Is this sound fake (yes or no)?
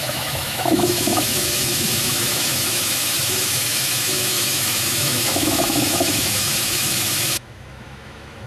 yes